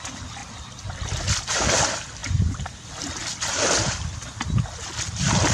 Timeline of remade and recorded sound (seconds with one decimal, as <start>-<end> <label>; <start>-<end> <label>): 0.0-2.2 recorded; 2.2-2.8 remade; 2.8-3.2 recorded; 3.2-4.0 remade; 4.0-5.5 recorded